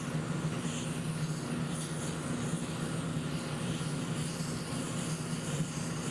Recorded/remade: recorded